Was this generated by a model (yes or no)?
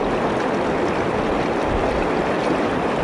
no